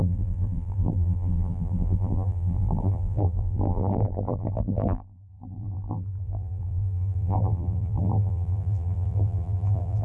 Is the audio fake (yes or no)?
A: yes